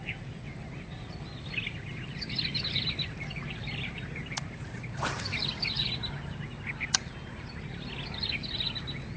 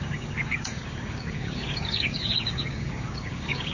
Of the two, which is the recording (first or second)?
first